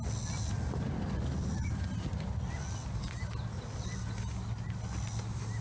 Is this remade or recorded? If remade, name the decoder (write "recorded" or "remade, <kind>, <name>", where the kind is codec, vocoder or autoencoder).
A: recorded